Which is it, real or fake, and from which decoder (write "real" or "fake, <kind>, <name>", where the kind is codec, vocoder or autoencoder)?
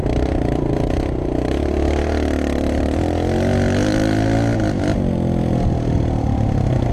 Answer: real